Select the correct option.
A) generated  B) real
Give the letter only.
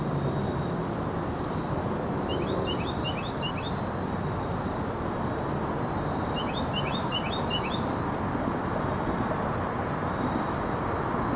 B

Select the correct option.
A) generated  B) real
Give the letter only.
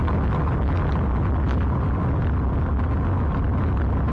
B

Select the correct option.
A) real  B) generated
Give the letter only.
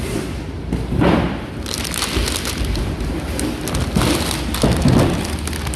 A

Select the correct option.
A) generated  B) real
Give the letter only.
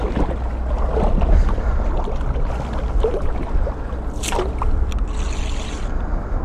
B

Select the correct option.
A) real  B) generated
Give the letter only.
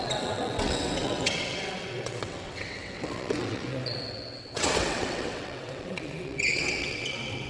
B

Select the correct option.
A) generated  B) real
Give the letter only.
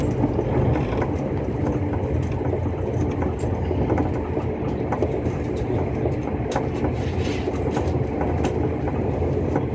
B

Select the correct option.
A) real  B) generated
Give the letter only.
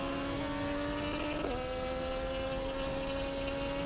A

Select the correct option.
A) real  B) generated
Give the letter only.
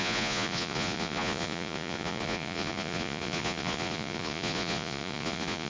B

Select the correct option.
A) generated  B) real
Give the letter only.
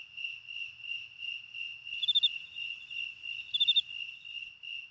B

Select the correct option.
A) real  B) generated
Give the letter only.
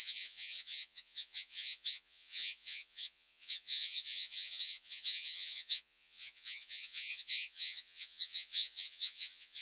B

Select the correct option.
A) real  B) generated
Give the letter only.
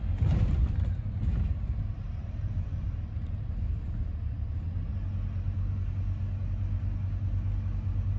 A